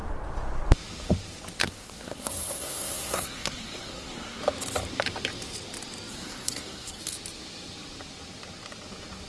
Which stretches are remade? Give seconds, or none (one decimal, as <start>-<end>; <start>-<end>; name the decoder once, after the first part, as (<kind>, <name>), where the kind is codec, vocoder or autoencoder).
1.6-4.4 (codec, SNAC); 6.1-7.0